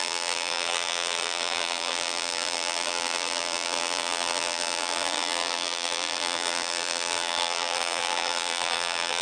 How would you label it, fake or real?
fake